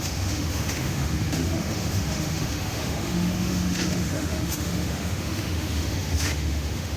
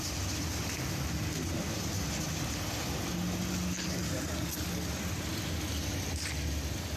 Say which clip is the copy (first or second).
first